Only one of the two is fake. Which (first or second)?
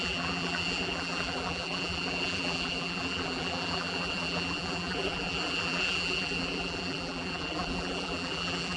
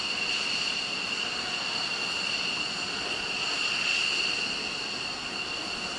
first